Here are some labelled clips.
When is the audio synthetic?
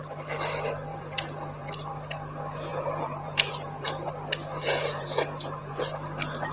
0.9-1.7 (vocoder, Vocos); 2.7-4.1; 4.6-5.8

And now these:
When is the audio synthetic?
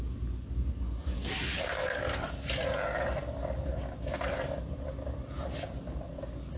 none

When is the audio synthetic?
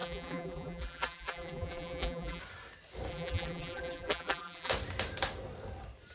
0.0-2.4 (vocoder, BigVGAN v2); 3.1-4.7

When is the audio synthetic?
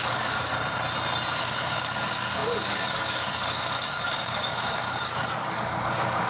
0.0-0.5 (codec, DAC); 1.4-6.3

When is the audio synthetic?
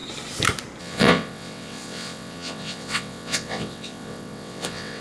0.8-5.0 (vocoder, WaveNeXt)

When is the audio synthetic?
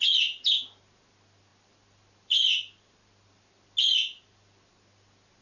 none